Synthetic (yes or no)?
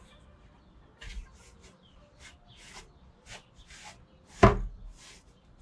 no